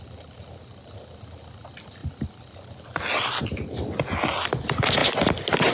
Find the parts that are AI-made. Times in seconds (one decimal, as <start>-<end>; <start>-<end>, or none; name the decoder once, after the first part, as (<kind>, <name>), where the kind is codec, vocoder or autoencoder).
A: none